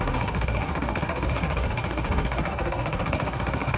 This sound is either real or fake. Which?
fake